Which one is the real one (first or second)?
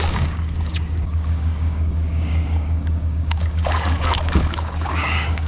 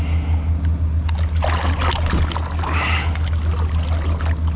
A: second